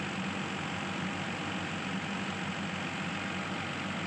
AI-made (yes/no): no